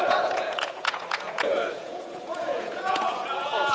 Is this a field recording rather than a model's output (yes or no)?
no